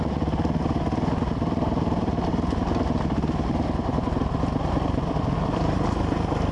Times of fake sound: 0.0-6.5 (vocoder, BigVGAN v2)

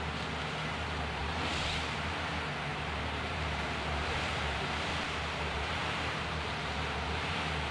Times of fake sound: 2.7-7.3 (vocoder, BigVGAN v2)